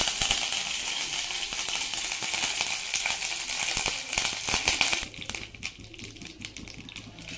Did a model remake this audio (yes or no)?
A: no